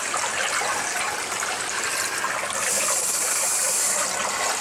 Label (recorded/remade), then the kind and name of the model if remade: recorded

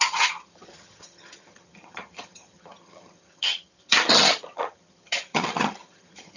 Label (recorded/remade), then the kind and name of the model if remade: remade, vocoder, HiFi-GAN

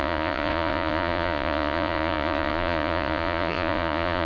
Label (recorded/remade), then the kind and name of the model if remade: remade, vocoder, Vocos